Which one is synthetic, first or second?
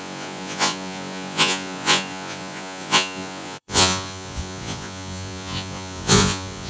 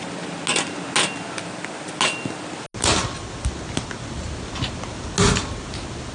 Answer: first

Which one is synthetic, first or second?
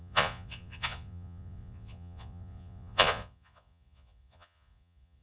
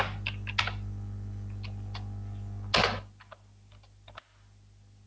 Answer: first